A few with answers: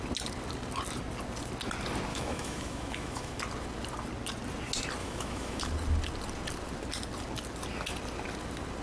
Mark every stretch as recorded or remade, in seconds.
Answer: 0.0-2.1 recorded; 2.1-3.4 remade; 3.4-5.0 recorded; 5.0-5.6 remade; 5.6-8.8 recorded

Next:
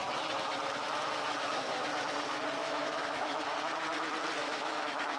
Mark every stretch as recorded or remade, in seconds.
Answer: 0.0-2.6 recorded; 2.6-3.4 remade; 3.4-4.4 recorded; 4.4-5.2 remade

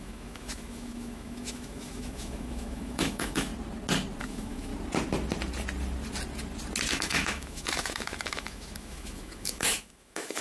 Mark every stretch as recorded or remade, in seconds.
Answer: 0.0-3.5 remade; 3.5-4.2 recorded; 4.2-4.7 remade; 4.7-6.9 recorded; 6.9-10.4 remade

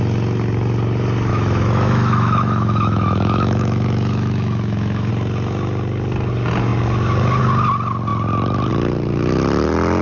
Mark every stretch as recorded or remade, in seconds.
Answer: 0.0-1.3 recorded; 1.3-5.1 remade; 5.1-10.0 recorded

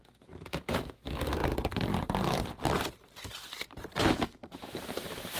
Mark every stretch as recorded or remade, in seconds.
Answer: 0.0-1.4 remade; 1.4-4.0 recorded; 4.0-5.4 remade

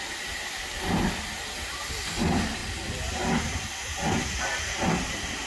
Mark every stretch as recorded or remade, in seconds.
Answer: 0.0-5.5 recorded